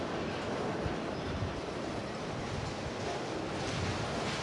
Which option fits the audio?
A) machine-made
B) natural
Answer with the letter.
B